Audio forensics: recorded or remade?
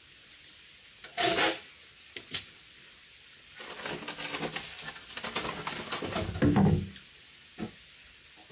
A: recorded